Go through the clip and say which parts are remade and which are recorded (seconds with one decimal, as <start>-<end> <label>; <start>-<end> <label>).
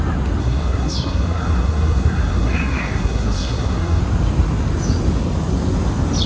0.0-0.4 recorded; 0.4-4.0 remade; 4.0-6.3 recorded